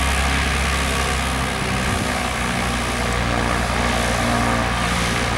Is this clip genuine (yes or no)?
yes